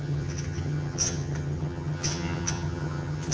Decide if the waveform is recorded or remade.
remade